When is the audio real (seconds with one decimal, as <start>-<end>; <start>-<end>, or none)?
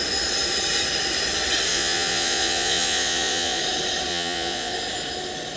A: 0.0-1.7; 3.6-4.1; 4.7-5.6